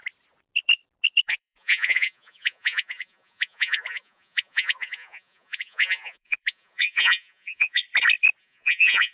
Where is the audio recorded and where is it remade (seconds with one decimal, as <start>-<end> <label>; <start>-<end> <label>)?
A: 0.0-1.2 recorded; 1.2-7.8 remade; 7.8-8.4 recorded; 8.4-9.1 remade